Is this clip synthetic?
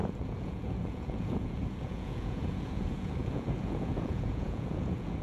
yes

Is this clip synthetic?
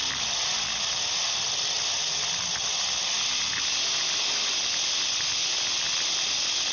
no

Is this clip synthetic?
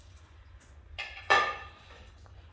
yes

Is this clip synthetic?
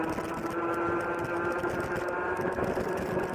no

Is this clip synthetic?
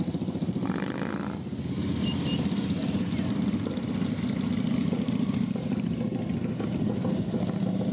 no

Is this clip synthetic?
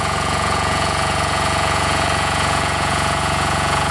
yes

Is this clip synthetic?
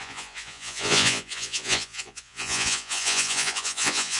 yes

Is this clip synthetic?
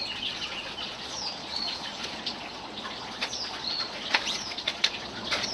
yes